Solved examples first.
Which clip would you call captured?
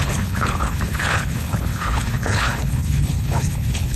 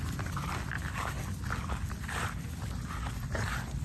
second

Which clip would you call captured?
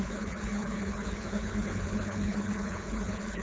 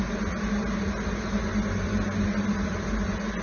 second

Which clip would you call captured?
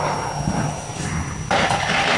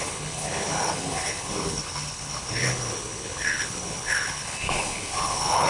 first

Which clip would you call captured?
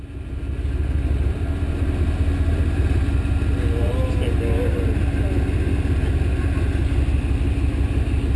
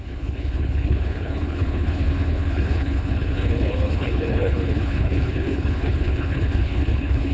first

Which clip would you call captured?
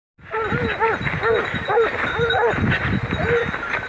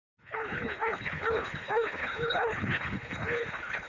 first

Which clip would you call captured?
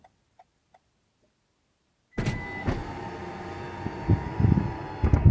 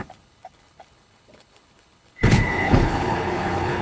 first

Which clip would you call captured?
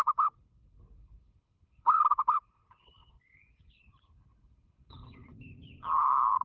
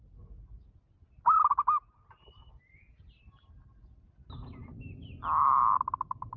second